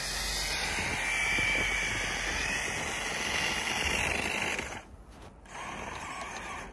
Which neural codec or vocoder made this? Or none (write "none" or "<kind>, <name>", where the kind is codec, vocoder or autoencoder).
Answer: none